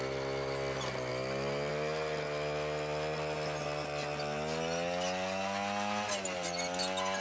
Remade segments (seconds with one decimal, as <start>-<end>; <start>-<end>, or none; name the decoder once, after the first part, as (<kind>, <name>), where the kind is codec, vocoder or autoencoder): none